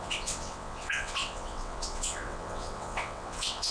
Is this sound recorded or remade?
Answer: remade